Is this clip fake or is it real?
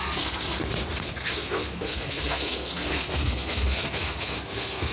fake